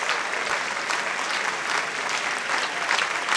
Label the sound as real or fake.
real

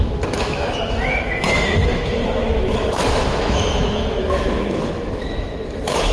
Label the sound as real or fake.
fake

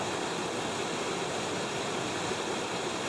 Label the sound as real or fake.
real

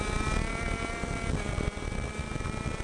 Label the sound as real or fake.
real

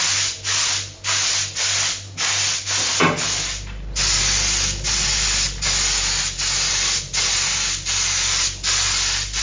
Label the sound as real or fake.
real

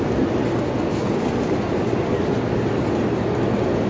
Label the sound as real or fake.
real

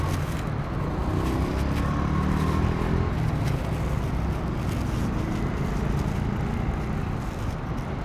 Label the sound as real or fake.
real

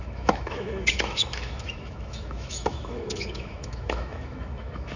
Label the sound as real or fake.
fake